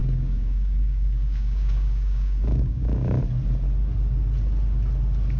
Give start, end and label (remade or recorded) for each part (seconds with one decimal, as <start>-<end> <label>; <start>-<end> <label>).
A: 0.0-3.2 remade; 3.2-5.4 recorded